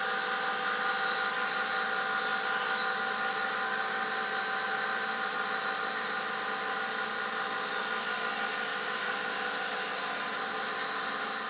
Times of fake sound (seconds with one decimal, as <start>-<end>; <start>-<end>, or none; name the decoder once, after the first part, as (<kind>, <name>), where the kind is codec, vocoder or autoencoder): none